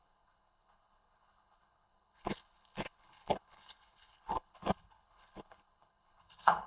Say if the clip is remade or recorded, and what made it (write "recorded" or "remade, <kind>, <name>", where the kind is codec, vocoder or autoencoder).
remade, codec, HILCodec